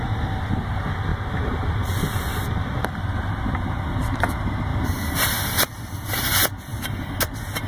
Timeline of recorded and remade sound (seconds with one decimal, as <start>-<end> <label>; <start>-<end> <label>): 0.0-4.7 recorded; 4.7-6.2 remade; 6.2-7.7 recorded

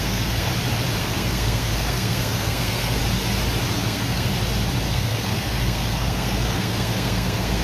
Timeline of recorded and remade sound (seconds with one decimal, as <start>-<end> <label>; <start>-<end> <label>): 0.0-0.5 remade; 0.5-1.0 recorded; 1.0-3.0 remade; 3.0-3.7 recorded; 3.7-4.3 remade; 4.3-4.9 recorded; 4.9-7.6 remade

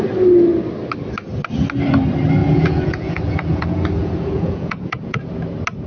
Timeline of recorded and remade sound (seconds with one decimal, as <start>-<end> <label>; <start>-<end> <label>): 0.0-2.4 recorded; 2.4-5.3 remade; 5.3-5.9 recorded

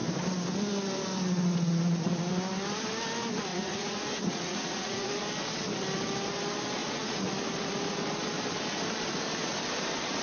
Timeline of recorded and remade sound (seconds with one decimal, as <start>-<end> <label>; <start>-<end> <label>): 0.0-3.5 recorded; 3.5-5.1 remade; 5.1-6.8 recorded; 6.8-7.3 remade; 7.3-10.2 recorded

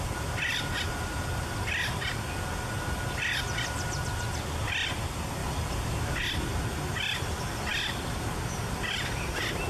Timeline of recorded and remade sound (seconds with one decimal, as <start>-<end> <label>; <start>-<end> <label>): 0.0-9.7 recorded

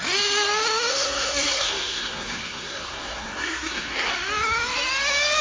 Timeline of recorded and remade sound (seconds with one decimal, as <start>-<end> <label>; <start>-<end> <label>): 0.0-0.9 recorded; 0.9-4.1 remade; 4.1-5.4 recorded

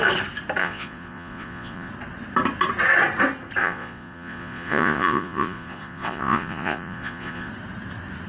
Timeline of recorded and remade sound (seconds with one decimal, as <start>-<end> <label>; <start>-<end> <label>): 0.0-0.6 recorded; 0.6-1.9 remade; 1.9-3.6 recorded; 3.6-7.5 remade; 7.5-8.3 recorded